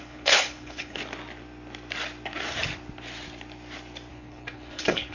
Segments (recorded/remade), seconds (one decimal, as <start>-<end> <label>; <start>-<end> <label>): 0.0-1.0 remade; 1.0-4.1 recorded; 4.1-5.1 remade